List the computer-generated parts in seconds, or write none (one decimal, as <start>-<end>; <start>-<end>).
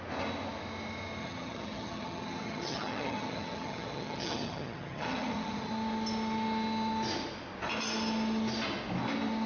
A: 1.2-5.7